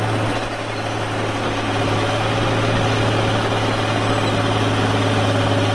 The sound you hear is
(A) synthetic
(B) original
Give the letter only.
B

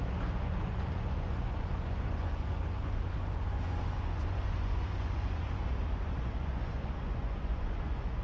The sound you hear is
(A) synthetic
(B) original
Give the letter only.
A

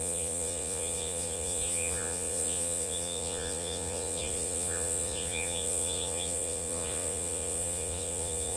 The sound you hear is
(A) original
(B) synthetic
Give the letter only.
B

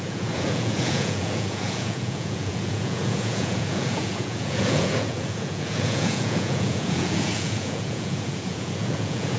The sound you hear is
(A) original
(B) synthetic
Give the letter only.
B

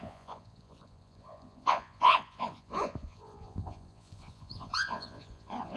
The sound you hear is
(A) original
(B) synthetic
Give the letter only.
B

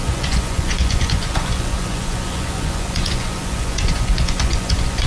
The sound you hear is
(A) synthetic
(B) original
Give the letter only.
A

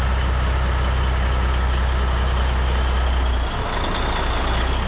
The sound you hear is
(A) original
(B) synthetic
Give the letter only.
A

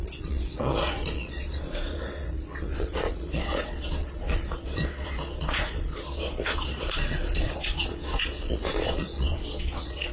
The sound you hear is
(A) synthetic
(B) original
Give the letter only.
A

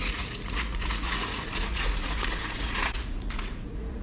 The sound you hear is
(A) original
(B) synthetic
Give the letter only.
B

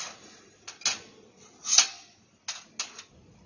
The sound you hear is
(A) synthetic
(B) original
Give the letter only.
B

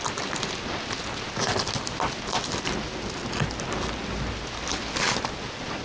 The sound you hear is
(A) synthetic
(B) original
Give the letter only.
B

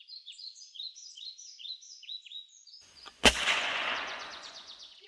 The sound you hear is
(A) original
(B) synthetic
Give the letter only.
B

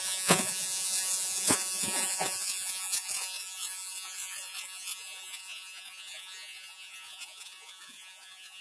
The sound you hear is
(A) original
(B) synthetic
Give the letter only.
B